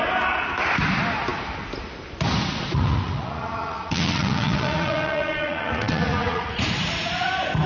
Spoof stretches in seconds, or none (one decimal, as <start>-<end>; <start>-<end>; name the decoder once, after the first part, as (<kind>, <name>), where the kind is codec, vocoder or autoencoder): 2.7-7.3 (vocoder, Vocos)